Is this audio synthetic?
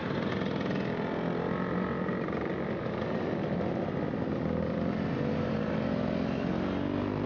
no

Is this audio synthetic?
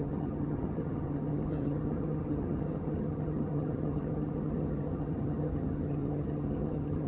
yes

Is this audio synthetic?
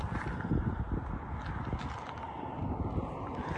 no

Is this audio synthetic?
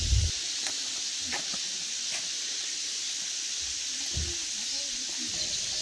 no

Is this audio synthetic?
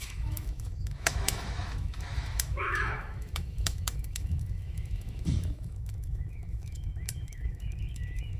yes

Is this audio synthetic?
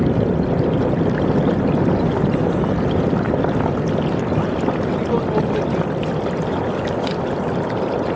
no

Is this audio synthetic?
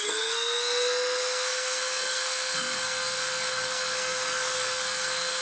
yes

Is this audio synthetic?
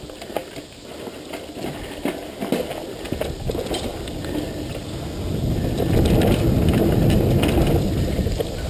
no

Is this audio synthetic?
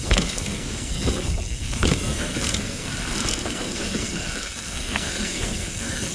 yes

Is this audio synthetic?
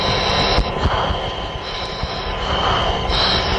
no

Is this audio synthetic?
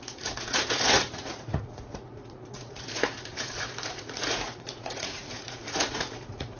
yes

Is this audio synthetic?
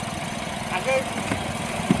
no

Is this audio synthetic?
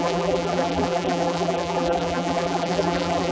yes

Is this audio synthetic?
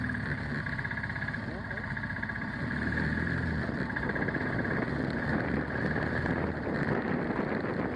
no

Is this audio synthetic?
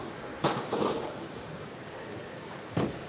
yes